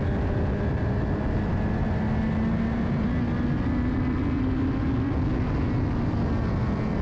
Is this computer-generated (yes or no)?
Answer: no